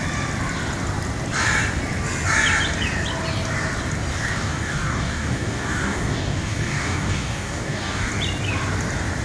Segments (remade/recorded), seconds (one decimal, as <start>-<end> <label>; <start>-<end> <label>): 0.0-4.1 recorded; 4.1-8.1 remade; 8.1-9.2 recorded